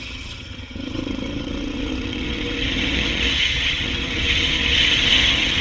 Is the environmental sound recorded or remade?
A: remade